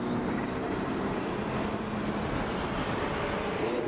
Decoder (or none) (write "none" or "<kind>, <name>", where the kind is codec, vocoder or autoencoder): none